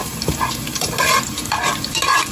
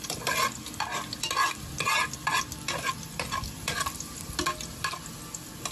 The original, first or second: second